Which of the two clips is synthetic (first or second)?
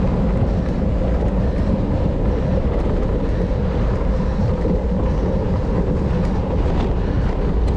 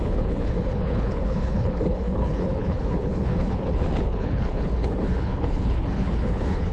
second